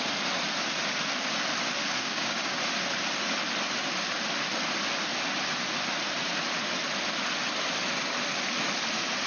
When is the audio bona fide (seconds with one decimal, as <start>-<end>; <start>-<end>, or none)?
0.0-2.0; 2.6-9.3